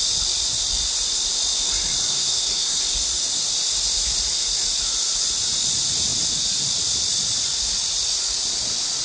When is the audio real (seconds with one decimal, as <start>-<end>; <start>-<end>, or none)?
0.0-2.1; 2.8-9.0